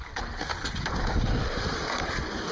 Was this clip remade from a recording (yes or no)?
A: no